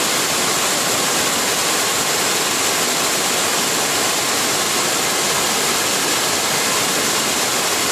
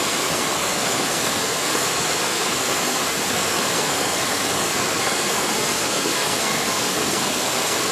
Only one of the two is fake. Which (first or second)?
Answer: second